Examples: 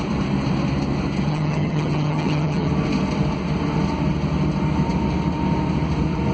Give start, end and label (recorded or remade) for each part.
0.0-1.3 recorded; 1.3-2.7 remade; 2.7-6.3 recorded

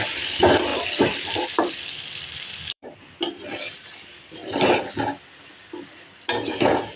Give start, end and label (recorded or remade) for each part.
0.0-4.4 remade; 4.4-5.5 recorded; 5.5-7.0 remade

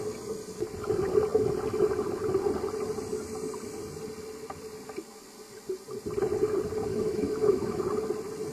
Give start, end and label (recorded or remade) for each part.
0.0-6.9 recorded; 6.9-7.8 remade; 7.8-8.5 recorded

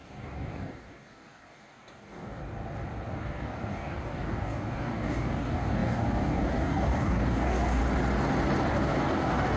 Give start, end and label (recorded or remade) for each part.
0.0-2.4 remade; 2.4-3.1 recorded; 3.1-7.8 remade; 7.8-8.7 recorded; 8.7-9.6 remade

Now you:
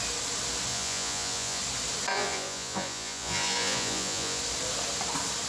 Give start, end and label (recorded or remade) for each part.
0.0-0.7 recorded; 0.7-1.6 remade; 1.6-2.1 recorded; 2.1-4.4 remade; 4.4-5.5 recorded

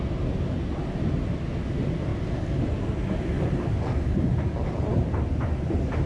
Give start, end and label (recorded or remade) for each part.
0.0-1.3 recorded; 1.3-6.1 remade

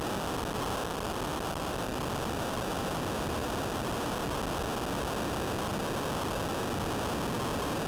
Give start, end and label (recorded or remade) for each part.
0.0-1.3 recorded; 1.3-4.4 remade; 4.4-7.9 recorded